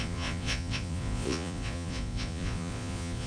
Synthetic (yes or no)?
yes